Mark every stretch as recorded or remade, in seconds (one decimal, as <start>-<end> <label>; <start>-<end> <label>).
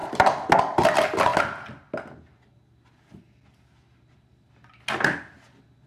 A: 0.0-0.5 remade; 0.5-5.9 recorded